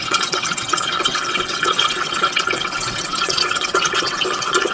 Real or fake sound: fake